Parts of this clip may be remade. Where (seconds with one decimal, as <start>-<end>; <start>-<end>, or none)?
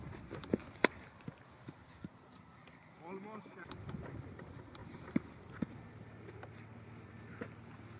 none